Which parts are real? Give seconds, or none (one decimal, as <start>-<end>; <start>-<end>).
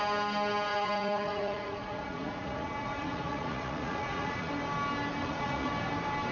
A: 0.0-0.7; 4.5-5.2; 5.7-6.3